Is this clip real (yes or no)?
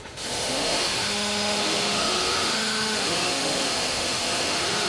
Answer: no